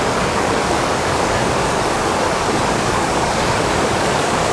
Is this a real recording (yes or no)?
no